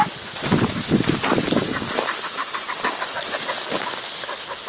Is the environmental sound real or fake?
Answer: real